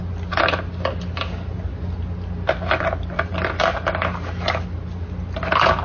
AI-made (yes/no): no